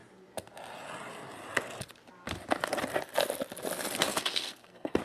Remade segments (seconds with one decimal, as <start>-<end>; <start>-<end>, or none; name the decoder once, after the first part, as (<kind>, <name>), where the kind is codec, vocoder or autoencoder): 4.1-5.0 (codec, SNAC)